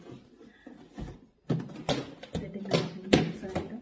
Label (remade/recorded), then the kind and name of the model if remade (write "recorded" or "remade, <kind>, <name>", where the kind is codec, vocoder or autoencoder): recorded